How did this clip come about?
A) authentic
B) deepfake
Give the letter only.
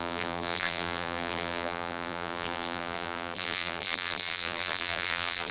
B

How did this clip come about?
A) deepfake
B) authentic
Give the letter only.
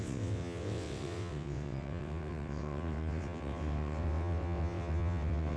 A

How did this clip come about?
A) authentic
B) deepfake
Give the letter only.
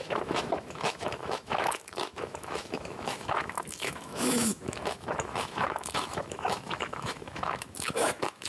B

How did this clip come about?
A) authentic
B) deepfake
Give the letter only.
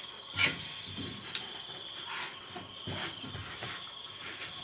A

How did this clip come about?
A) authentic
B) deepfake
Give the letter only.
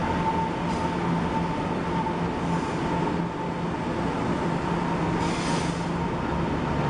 A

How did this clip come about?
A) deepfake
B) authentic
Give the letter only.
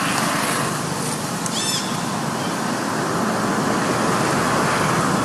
B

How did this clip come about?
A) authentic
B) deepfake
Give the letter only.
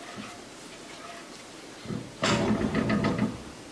B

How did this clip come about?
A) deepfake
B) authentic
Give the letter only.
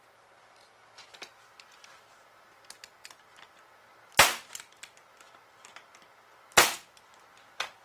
B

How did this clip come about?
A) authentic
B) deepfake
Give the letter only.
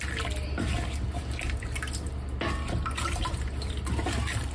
A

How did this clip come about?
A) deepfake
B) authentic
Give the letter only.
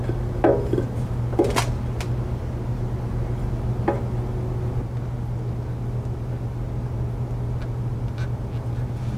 B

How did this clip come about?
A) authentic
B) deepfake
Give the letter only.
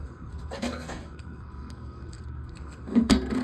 B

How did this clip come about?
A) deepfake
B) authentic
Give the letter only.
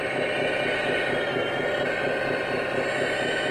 B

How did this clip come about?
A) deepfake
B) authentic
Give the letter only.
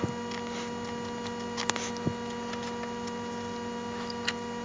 B